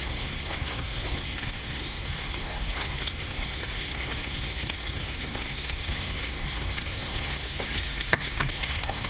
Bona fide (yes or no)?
no